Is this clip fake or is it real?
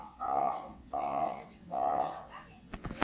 fake